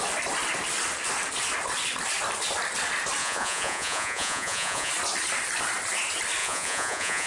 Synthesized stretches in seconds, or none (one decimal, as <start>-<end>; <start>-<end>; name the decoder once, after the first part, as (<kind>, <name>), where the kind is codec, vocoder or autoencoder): 3.2-4.9 (vocoder, Vocos); 6.4-7.3